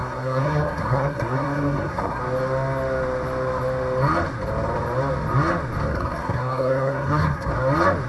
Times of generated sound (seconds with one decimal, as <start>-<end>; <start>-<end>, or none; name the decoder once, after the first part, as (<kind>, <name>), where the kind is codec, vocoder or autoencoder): 0.0-2.2 (codec, SNAC); 5.9-7.5